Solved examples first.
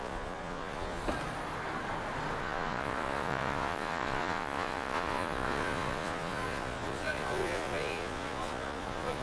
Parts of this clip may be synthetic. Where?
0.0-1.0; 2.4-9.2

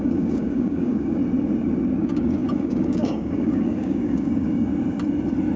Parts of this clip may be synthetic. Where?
0.0-1.2; 2.0-4.7